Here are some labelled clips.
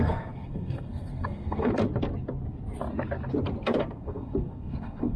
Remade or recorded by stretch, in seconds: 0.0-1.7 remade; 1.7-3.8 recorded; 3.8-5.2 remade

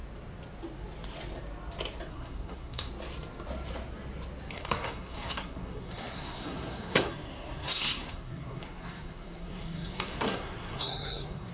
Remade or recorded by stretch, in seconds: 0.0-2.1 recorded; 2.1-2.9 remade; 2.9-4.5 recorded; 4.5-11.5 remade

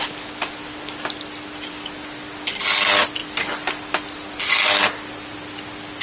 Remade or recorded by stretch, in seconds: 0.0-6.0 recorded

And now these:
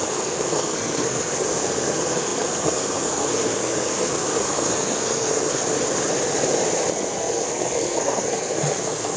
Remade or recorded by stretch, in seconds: 0.0-5.6 remade; 5.6-6.9 recorded; 6.9-9.2 remade

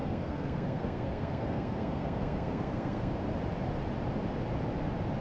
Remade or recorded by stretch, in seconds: 0.0-3.1 remade; 3.1-5.2 recorded

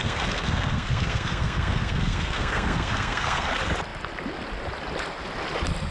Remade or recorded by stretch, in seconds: 0.0-3.5 remade; 3.5-5.9 recorded

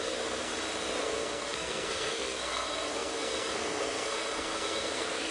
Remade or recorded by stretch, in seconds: 0.0-0.5 remade; 0.5-1.0 recorded; 1.0-5.3 remade

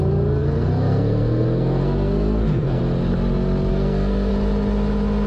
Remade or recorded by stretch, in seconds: 0.0-0.4 recorded; 0.4-2.8 remade; 2.8-3.7 recorded; 3.7-4.3 remade; 4.3-5.3 recorded